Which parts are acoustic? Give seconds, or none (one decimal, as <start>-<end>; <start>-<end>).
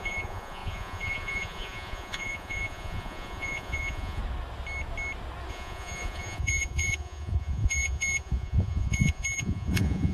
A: 4.2-5.5